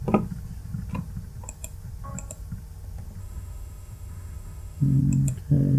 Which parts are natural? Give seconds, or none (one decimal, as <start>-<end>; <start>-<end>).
0.0-3.2; 5.0-5.8